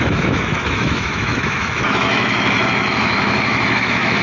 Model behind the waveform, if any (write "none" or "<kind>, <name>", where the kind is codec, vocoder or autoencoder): autoencoder, DAC-VAE